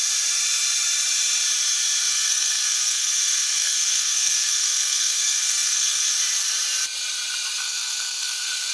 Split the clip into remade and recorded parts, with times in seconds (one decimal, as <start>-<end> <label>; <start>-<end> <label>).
0.0-2.1 recorded; 2.1-6.1 remade; 6.1-7.6 recorded; 7.6-8.7 remade